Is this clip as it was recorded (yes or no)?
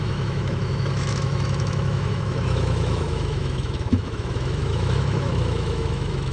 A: no